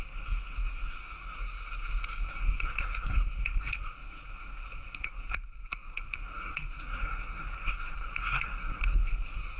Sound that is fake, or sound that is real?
fake